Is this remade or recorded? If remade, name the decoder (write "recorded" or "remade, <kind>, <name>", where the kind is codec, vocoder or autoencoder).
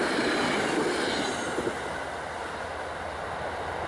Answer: recorded